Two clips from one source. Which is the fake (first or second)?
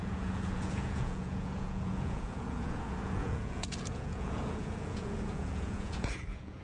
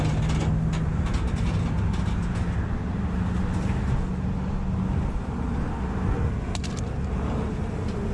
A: first